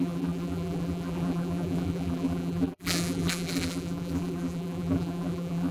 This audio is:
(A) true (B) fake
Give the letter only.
B